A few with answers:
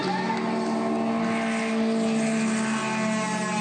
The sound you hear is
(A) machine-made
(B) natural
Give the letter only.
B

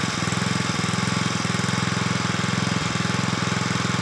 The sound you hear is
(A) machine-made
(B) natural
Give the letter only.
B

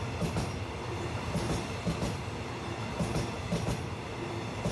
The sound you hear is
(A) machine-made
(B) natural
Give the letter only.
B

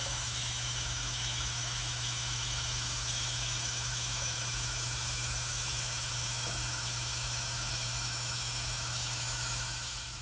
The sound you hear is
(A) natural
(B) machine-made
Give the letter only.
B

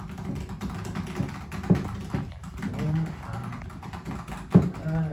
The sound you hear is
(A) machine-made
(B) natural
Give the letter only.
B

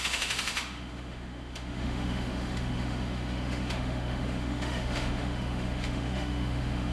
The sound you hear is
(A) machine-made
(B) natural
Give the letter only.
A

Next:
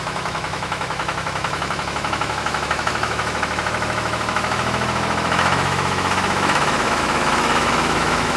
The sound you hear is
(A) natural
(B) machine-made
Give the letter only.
B